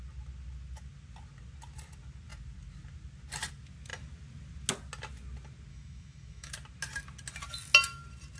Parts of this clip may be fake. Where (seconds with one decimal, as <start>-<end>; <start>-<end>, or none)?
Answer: 5.7-6.5